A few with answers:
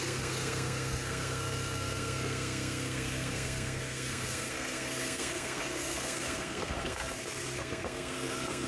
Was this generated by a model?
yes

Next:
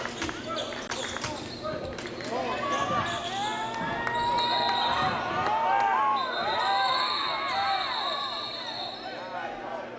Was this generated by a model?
no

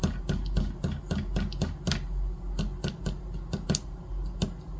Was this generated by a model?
no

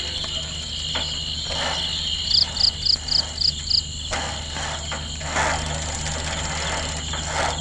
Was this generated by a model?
no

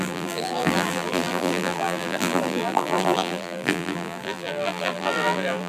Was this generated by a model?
yes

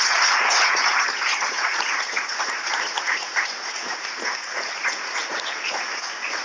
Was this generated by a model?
yes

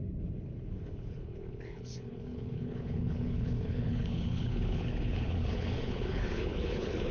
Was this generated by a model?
yes